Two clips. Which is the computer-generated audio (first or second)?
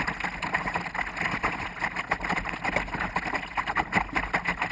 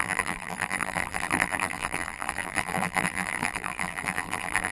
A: second